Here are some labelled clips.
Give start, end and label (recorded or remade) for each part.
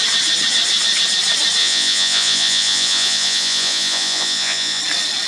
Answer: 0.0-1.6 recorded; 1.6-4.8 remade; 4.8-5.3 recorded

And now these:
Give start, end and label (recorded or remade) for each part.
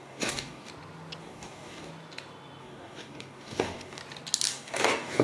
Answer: 0.0-0.7 remade; 0.7-1.2 recorded; 1.2-1.9 remade; 1.9-2.6 recorded; 2.6-4.0 remade; 4.0-4.5 recorded; 4.5-5.2 remade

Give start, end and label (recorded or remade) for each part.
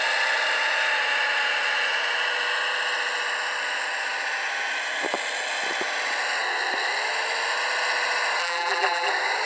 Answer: 0.0-8.4 recorded; 8.4-9.1 remade; 9.1-9.5 recorded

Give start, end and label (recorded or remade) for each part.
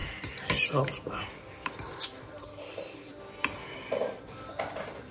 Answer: 0.0-5.1 recorded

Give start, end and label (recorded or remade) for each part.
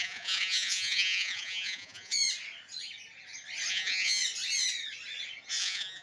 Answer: 0.0-2.2 remade; 2.2-3.7 recorded; 3.7-4.2 remade; 4.2-5.6 recorded; 5.6-6.0 remade